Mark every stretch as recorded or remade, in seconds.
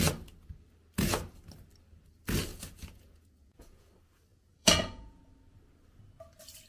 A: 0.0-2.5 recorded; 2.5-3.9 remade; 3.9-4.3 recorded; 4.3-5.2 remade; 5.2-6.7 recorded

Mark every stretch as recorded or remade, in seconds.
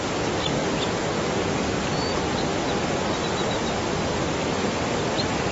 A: 0.0-5.5 recorded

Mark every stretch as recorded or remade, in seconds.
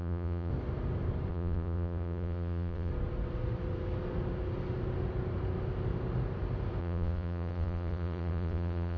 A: 0.0-0.5 remade; 0.5-1.3 recorded; 1.3-2.9 remade; 2.9-6.8 recorded; 6.8-9.0 remade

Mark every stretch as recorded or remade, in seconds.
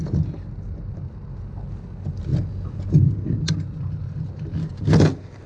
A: 0.0-5.5 recorded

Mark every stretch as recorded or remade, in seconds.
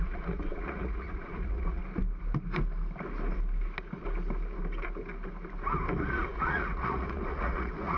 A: 0.0-1.8 remade; 1.8-6.0 recorded; 6.0-8.0 remade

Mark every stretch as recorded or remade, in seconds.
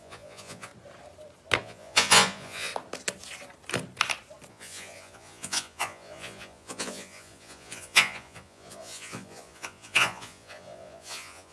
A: 0.0-0.7 remade; 0.7-1.6 recorded; 1.6-2.7 remade; 2.7-4.5 recorded; 4.5-11.5 remade